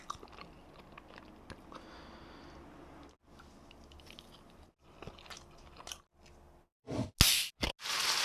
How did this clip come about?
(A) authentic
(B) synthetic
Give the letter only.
A